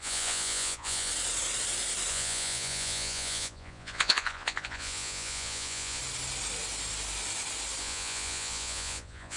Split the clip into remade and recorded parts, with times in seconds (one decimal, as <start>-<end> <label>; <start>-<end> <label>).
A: 0.0-1.1 remade; 1.1-2.1 recorded; 2.1-6.0 remade; 6.0-7.8 recorded; 7.8-9.4 remade